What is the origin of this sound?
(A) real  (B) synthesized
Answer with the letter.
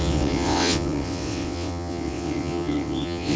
B